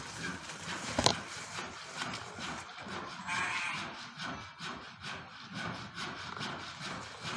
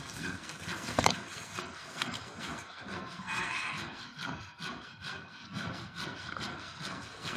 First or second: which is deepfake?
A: second